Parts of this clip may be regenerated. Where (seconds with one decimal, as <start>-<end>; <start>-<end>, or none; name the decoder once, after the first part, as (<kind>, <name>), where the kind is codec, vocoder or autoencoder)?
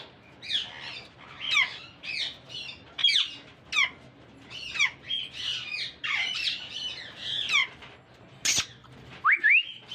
none